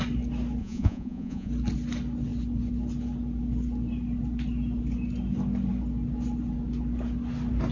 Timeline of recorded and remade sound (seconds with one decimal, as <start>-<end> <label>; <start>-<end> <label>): 0.0-0.6 recorded; 0.6-1.5 remade; 1.5-7.7 recorded